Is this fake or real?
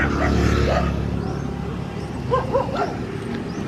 real